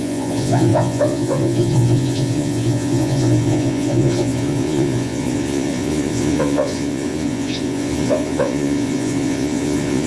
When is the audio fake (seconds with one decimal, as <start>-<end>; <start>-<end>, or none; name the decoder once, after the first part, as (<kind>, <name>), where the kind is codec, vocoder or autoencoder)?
0.0-10.1 (vocoder, Vocos)